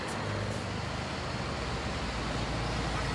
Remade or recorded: recorded